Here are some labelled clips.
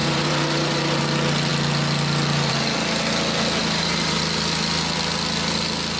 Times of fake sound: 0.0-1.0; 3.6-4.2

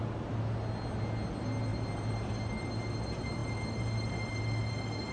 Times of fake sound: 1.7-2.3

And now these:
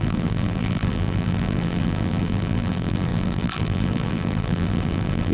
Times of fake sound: 0.0-5.3

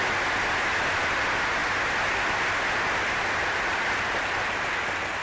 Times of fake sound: none

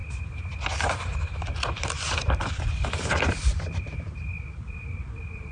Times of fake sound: 3.3-5.5

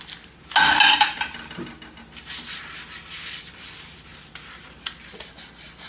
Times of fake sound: none

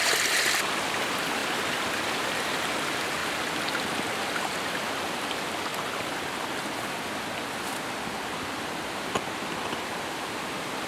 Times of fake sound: 0.0-1.4; 2.3-3.2; 4.2-5.7; 8.3-10.9